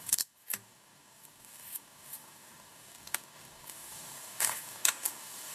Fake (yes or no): yes